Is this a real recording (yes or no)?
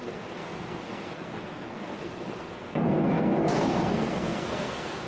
no